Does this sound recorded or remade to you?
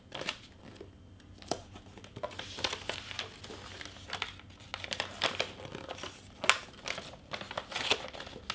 recorded